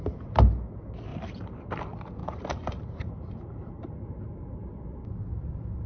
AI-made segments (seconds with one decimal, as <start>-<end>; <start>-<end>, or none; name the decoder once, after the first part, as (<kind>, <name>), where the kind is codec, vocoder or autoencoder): 1.1-1.8 (vocoder, BigVGAN v2); 2.2-3.9